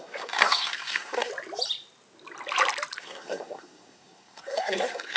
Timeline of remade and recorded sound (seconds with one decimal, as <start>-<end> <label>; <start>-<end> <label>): 0.0-1.3 remade; 1.3-3.0 recorded; 3.0-5.2 remade